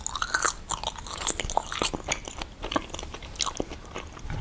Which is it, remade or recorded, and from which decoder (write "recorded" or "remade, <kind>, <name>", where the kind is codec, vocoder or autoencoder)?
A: recorded